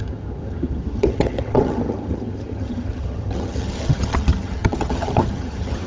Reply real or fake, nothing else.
fake